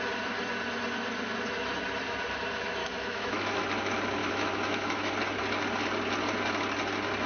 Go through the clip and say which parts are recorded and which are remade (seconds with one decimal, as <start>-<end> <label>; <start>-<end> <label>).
0.0-2.8 recorded; 2.8-3.6 remade; 3.6-4.2 recorded; 4.2-5.1 remade; 5.1-7.3 recorded